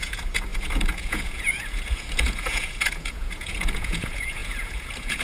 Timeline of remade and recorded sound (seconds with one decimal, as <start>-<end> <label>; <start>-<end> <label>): 0.0-5.2 remade